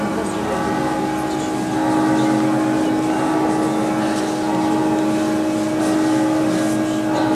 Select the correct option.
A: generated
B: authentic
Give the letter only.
B